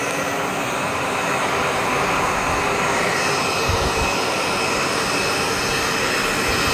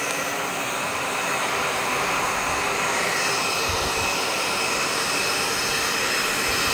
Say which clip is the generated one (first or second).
second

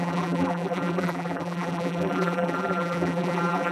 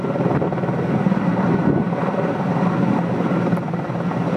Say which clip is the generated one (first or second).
first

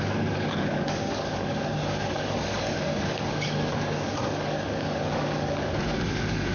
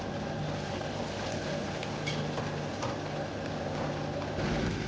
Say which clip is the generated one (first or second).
first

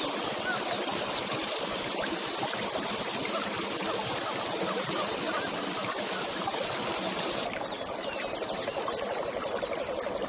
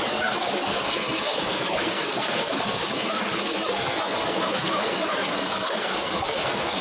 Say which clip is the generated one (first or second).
second